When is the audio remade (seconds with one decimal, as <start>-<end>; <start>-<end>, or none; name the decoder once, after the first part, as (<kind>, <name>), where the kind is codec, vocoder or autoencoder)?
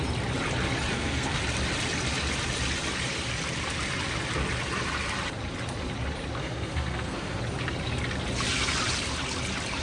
0.9-1.4 (codec, SNAC); 6.4-7.4